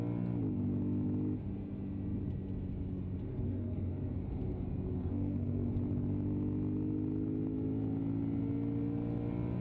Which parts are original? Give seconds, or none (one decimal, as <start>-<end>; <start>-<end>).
0.0-3.3; 3.9-5.0; 5.7-9.6